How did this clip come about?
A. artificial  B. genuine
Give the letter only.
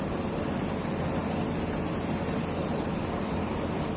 B